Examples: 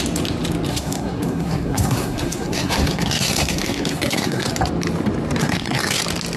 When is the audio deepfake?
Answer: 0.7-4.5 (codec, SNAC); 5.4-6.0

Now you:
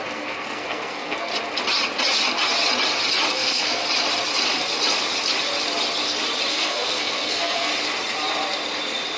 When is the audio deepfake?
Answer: 0.0-1.3 (codec, SNAC); 3.3-3.8; 6.5-7.7

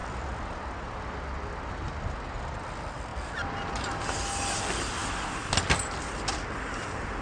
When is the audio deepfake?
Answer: none